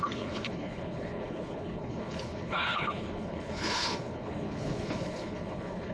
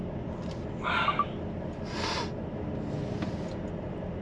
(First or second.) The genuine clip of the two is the second